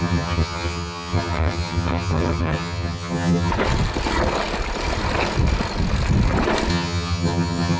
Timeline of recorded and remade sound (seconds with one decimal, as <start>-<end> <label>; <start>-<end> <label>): 0.0-3.5 remade; 3.5-6.7 recorded; 6.7-7.8 remade